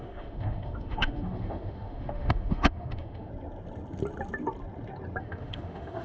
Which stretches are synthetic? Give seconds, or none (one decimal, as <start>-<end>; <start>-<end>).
0.0-3.3; 5.2-6.0